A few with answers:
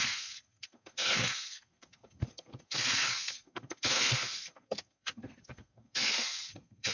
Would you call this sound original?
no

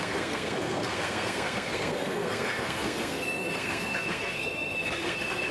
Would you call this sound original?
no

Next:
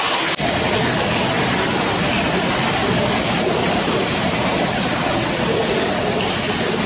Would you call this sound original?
yes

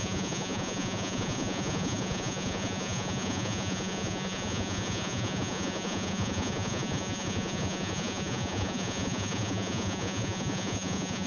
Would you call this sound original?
no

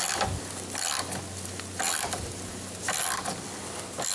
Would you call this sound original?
yes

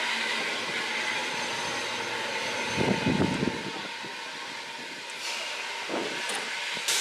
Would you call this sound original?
yes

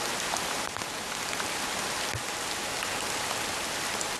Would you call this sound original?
yes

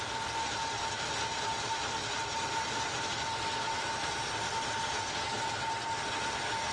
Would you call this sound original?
yes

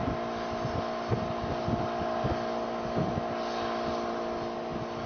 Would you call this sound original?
yes